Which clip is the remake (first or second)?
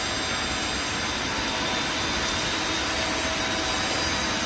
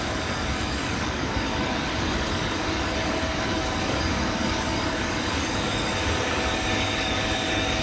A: second